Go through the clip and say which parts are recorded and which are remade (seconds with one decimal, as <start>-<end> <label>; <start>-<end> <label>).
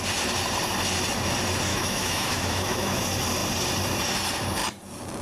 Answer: 0.0-1.7 recorded; 1.7-3.0 remade; 3.0-5.2 recorded